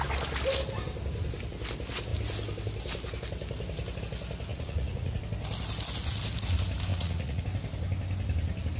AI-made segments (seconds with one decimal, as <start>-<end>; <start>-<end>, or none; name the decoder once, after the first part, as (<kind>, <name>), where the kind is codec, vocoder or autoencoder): 4.5-5.2 (vocoder, Vocos); 6.9-7.4